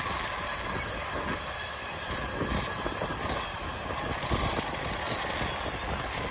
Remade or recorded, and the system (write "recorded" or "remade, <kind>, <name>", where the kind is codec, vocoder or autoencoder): recorded